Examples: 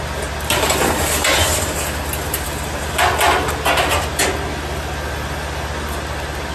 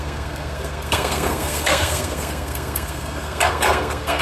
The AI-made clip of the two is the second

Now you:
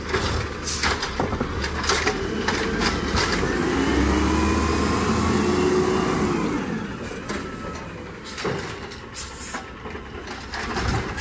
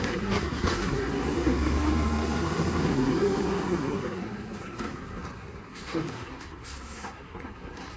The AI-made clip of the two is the second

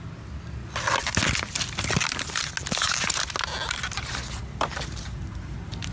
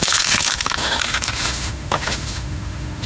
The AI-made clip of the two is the second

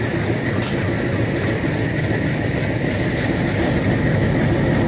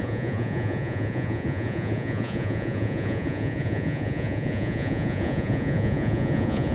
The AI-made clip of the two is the second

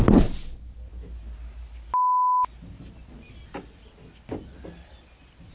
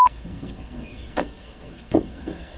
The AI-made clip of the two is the second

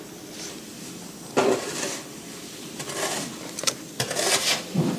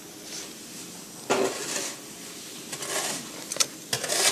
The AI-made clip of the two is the first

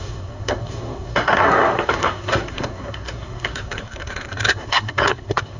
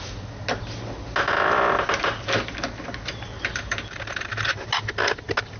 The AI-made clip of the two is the first